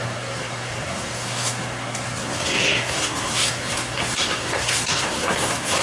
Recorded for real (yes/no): no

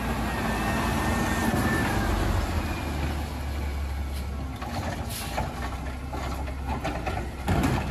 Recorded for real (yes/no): yes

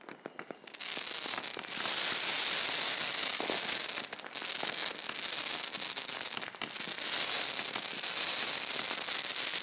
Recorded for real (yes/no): yes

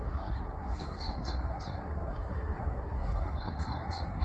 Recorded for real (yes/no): no